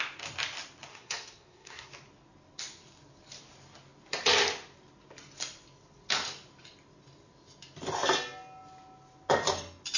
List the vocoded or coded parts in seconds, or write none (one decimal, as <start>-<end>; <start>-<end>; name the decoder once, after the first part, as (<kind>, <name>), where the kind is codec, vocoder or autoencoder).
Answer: 0.9-1.9 (codec, SNAC)